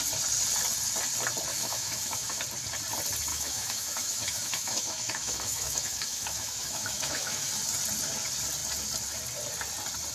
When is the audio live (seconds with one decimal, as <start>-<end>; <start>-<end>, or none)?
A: 0.0-1.5; 2.4-3.3; 7.5-10.1